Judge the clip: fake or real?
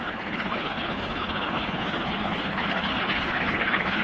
fake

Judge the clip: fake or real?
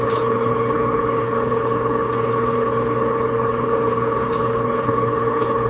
fake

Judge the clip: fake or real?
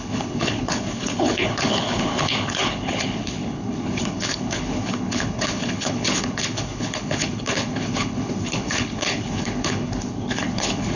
fake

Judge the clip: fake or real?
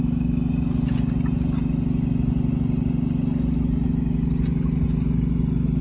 real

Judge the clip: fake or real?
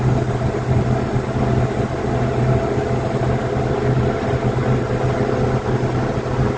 real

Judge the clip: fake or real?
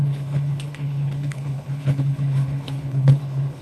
fake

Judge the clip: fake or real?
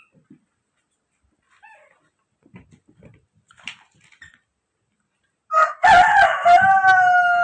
real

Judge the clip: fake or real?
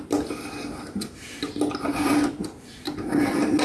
real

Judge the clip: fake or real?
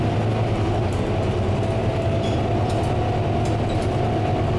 real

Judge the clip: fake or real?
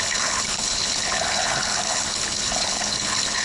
fake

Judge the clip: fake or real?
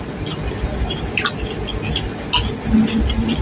real